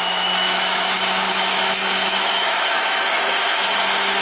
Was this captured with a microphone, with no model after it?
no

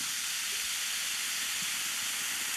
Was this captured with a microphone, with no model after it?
yes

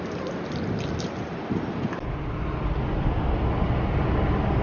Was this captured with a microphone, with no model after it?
yes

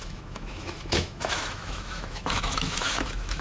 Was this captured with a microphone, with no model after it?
no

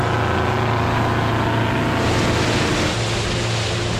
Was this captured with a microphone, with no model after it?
yes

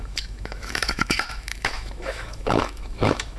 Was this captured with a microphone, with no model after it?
no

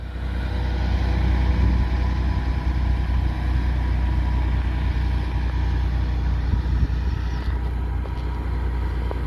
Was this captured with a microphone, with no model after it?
yes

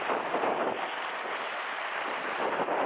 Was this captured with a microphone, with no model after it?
yes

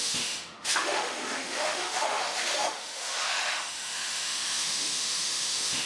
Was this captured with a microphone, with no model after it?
no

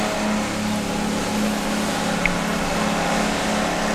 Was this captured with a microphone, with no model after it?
yes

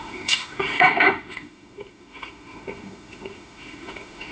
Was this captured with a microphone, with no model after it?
no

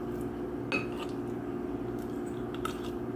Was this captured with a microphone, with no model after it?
yes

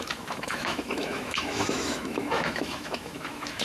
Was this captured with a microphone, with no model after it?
no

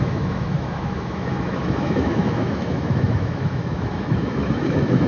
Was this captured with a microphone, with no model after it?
no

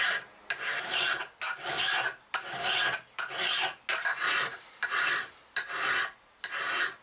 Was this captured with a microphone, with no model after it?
yes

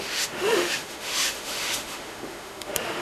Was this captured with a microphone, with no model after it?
no